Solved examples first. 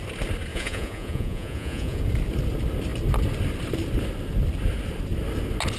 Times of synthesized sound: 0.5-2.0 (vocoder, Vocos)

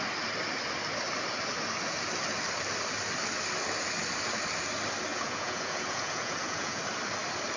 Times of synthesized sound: 5.1-6.8 (vocoder, Vocos)